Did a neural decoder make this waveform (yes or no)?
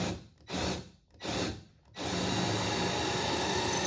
no